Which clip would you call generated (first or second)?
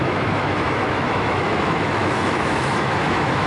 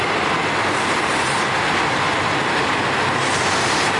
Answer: first